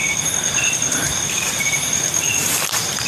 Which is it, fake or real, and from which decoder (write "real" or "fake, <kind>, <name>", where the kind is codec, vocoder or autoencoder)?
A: fake, vocoder, BigVGAN v2